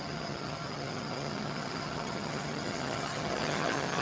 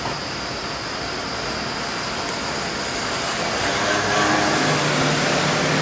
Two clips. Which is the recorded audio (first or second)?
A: second